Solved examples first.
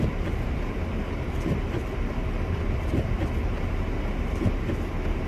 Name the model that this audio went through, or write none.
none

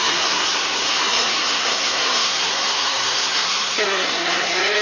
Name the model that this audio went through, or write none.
codec, SNAC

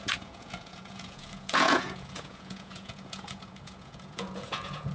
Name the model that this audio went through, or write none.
vocoder, Vocos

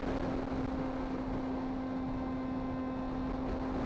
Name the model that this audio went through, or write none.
none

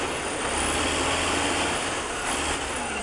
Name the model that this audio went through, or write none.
none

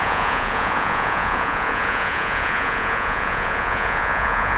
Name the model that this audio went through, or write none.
vocoder, Vocos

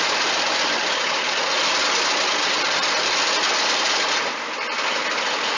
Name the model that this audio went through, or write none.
none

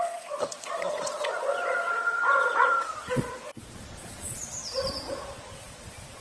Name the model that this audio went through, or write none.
vocoder, Vocos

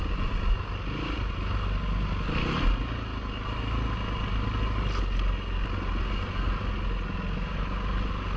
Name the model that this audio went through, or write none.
none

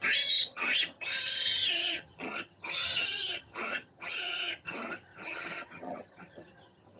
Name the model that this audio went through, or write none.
vocoder, HiFi-GAN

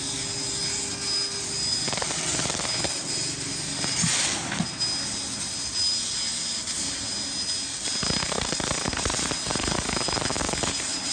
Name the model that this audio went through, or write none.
none